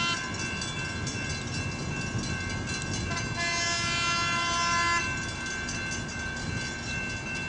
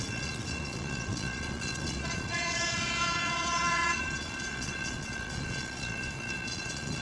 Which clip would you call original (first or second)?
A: first